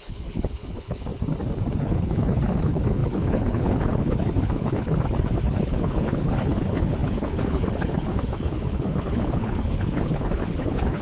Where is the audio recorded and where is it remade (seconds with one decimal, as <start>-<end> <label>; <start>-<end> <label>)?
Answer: 0.0-1.1 remade; 1.1-1.8 recorded; 1.8-11.0 remade